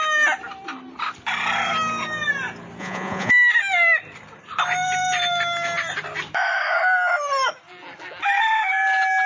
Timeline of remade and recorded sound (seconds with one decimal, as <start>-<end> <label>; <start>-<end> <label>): 0.0-2.8 recorded; 2.8-3.3 remade; 3.3-9.3 recorded